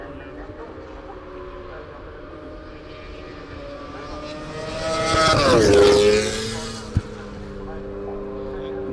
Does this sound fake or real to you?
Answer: real